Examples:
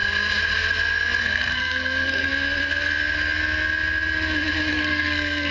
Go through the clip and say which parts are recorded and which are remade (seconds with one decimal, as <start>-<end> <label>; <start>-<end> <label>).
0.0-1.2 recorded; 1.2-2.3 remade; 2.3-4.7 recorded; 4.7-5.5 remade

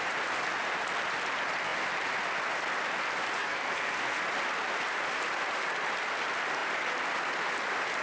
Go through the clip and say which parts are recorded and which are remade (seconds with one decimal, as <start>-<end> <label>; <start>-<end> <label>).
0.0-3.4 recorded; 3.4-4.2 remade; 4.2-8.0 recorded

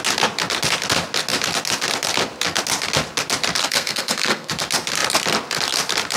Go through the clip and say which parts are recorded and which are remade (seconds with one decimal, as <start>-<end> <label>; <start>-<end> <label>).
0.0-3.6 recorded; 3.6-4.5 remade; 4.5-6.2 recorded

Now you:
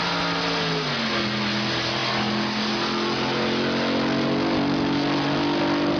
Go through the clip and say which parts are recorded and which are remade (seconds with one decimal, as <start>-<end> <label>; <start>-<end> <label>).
0.0-6.0 recorded

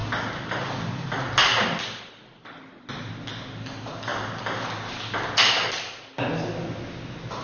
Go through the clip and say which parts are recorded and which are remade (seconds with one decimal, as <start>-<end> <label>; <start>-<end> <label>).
0.0-7.4 recorded

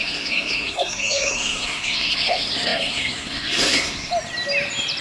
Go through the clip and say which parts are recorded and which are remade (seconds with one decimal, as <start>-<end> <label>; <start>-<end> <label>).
0.0-4.1 remade; 4.1-5.0 recorded

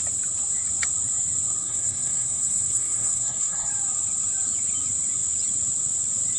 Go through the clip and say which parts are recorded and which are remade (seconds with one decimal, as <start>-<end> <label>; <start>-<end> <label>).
0.0-1.6 recorded; 1.6-3.7 remade; 3.7-6.4 recorded